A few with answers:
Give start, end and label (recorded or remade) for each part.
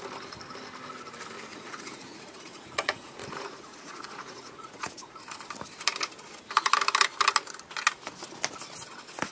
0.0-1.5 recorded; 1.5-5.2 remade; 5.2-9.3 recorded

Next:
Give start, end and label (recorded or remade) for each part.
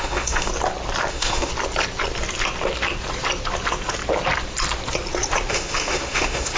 0.0-0.5 remade; 0.5-1.1 recorded; 1.1-1.5 remade; 1.5-5.5 recorded; 5.5-6.6 remade